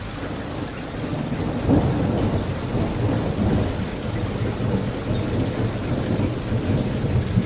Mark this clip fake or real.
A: real